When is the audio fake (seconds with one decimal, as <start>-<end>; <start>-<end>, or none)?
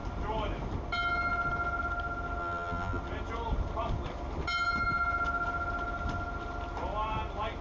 2.4-3.0